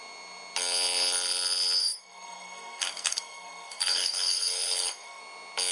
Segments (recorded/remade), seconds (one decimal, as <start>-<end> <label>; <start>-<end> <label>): 0.0-1.8 recorded; 1.8-5.2 remade; 5.2-5.7 recorded